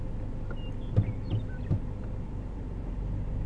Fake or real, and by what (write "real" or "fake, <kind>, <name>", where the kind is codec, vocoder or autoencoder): real